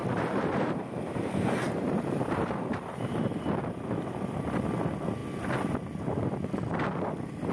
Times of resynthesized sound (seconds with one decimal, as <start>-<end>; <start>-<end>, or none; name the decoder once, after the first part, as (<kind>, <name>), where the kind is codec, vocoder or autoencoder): 0.0-3.2 (vocoder, BigVGAN v2)